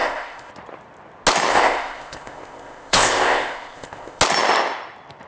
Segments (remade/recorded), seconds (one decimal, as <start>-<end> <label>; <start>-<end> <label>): 0.0-0.5 remade; 0.5-1.5 recorded; 1.5-4.2 remade; 4.2-5.3 recorded